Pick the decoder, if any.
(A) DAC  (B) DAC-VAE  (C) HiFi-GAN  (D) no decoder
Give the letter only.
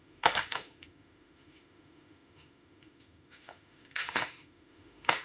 B